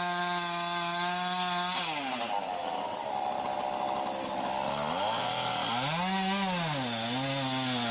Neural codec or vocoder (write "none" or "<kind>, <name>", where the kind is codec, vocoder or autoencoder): none